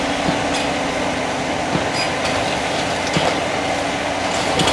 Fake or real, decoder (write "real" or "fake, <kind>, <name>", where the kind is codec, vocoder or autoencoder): real